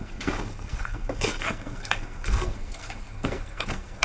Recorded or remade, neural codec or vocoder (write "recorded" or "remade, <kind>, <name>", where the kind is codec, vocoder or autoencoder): remade, codec, SNAC